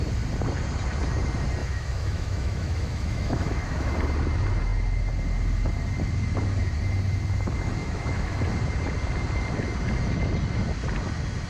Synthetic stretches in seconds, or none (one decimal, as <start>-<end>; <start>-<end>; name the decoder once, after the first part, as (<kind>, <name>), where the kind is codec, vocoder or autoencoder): 1.6-3.9 (autoencoder, DAC-VAE); 7.8-8.5